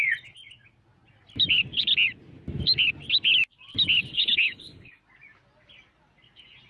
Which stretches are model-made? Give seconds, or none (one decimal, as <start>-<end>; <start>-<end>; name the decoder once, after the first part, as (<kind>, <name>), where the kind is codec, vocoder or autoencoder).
4.1-5.0 (codec, HILCodec)